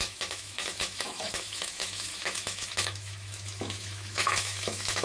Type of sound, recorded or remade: remade